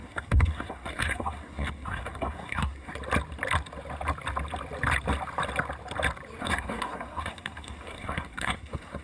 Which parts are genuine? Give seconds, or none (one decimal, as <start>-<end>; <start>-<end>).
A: 2.9-6.4